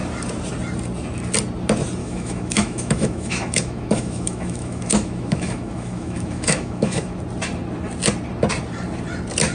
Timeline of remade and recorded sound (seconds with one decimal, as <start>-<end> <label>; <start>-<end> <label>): 0.0-2.0 recorded; 2.0-7.2 remade; 7.2-9.5 recorded

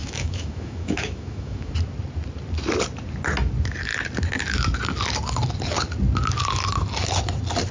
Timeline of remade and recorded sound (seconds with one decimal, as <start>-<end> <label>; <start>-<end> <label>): 0.0-1.7 remade; 1.7-7.7 recorded